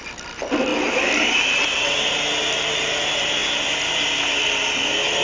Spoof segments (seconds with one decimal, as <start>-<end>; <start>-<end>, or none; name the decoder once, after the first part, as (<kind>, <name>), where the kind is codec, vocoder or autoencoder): none